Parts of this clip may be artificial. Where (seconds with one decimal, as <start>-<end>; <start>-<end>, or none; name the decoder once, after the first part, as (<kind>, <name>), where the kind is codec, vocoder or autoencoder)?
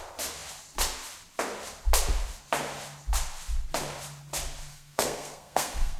4.7-6.0 (codec, SNAC)